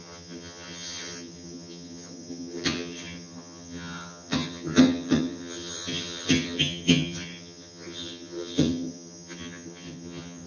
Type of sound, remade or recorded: remade